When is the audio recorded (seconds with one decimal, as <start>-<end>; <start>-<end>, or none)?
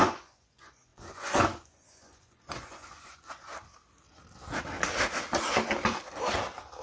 3.5-6.8